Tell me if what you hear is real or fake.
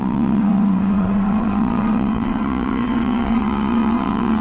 fake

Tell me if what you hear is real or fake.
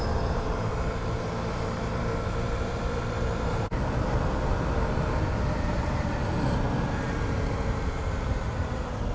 fake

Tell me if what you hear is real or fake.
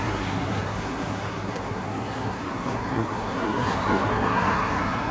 fake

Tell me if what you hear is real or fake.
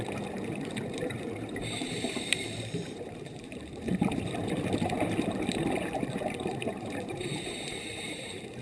fake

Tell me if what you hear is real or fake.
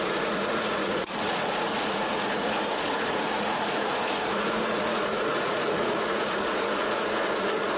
fake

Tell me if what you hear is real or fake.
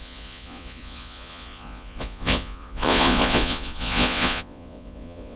fake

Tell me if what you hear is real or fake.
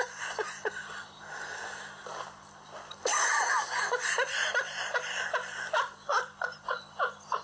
real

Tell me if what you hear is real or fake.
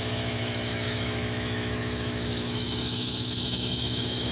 fake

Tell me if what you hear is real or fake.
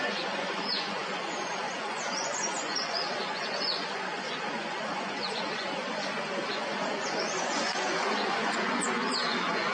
fake